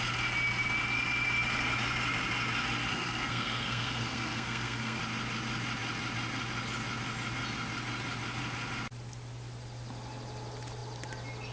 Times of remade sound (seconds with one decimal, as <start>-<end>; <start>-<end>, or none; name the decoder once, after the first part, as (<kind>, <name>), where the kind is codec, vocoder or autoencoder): 2.9-5.0 (codec, SNAC)